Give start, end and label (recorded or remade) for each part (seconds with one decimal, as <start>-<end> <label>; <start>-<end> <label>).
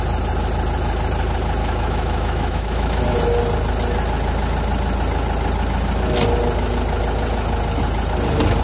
0.0-1.6 recorded; 1.6-3.0 remade; 3.0-8.6 recorded